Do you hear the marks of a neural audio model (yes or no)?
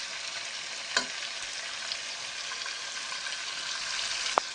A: no